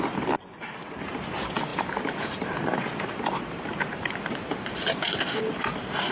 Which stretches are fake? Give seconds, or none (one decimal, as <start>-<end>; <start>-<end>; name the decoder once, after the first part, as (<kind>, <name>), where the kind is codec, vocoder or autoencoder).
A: none